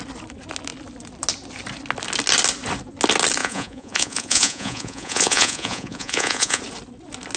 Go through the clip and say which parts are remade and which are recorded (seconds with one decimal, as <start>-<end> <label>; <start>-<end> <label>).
0.0-3.4 recorded; 3.4-6.6 remade; 6.6-7.4 recorded